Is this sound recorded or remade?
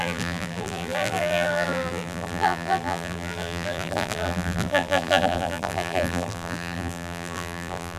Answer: remade